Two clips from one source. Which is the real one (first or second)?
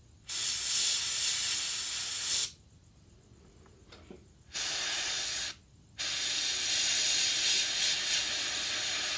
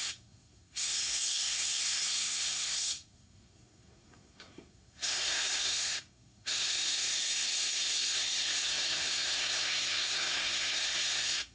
first